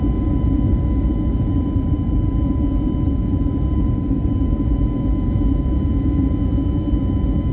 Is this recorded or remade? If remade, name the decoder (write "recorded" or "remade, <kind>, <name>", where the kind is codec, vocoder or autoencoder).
remade, vocoder, BigVGAN v2